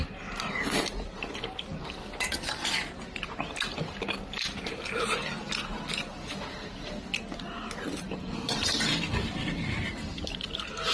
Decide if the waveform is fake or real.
real